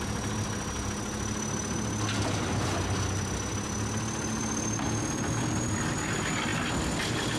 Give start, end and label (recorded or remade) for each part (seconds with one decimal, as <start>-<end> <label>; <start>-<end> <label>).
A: 0.0-7.4 recorded